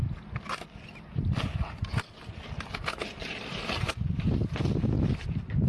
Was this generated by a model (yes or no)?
no